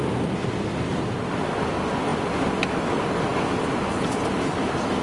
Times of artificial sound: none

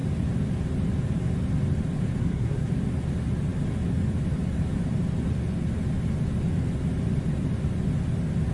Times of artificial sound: 2.2-2.7

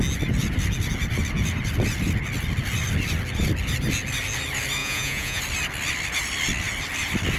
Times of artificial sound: 4.8-5.4

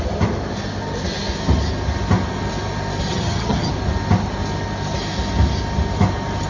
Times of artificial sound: 3.1-3.7

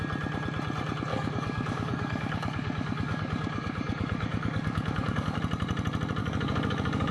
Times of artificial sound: 1.1-5.4; 6.2-7.1

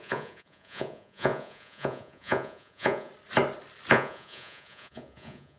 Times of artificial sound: 0.0-3.1; 3.9-5.6

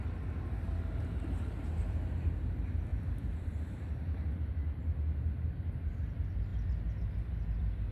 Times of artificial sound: 2.9-4.5